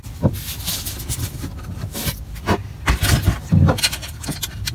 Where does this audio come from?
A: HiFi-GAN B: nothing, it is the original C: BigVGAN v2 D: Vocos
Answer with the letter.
B